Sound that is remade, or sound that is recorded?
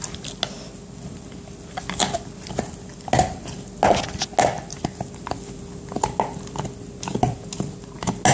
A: recorded